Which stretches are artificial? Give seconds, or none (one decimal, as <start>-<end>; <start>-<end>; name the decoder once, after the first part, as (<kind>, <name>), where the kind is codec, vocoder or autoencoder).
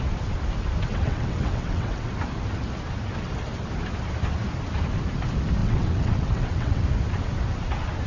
0.9-2.1 (vocoder, WaveNeXt); 5.6-6.8